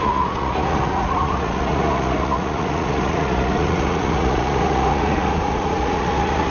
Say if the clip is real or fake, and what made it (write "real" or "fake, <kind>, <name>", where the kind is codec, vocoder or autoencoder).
fake, vocoder, Vocos